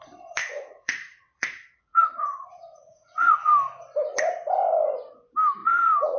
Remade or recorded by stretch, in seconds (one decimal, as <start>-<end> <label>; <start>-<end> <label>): 0.0-0.4 recorded; 0.4-3.5 remade; 3.5-5.6 recorded; 5.6-6.2 remade